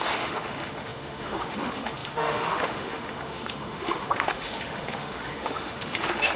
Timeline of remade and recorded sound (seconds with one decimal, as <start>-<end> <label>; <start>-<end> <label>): 0.0-6.4 remade